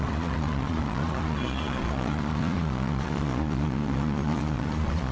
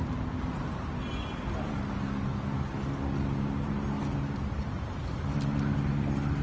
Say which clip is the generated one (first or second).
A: first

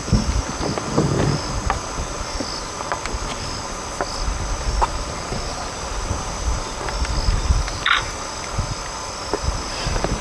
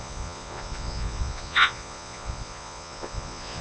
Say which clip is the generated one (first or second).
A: second